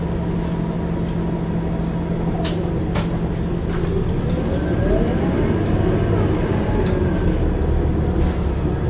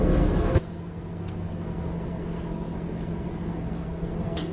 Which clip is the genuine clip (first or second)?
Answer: first